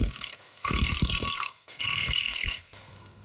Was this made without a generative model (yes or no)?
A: no